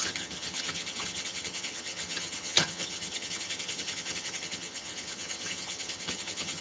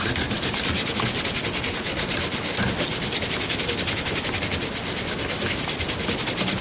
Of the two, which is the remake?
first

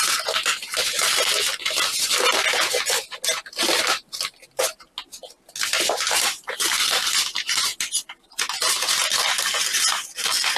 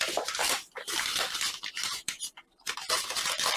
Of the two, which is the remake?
second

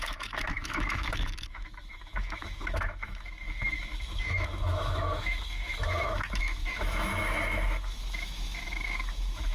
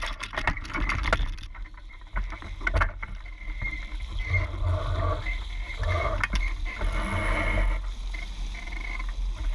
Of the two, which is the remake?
first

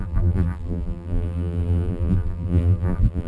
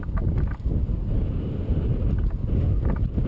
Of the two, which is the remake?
first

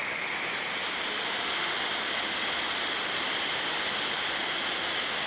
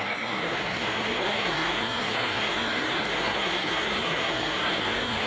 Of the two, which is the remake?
second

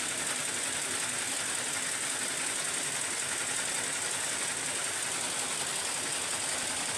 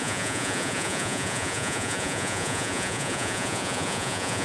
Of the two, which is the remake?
second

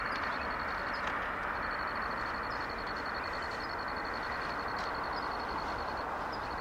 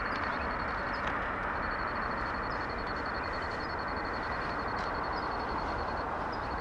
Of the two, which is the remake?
second